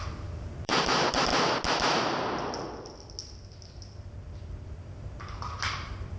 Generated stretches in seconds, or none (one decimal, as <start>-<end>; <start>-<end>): 0.0-1.3; 5.0-6.2